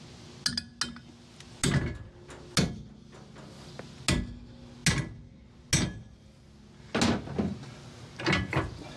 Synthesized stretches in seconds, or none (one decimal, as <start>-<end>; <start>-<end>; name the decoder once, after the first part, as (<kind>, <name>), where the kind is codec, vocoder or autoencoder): none